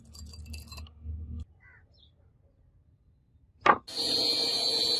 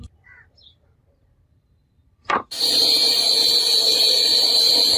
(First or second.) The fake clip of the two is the second